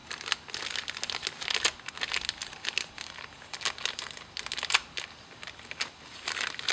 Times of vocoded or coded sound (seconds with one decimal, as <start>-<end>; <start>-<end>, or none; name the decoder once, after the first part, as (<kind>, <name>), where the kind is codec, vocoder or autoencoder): none